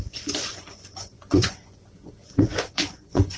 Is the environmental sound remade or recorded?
remade